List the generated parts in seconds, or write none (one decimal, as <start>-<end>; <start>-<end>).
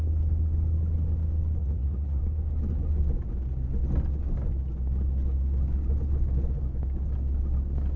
1.6-2.2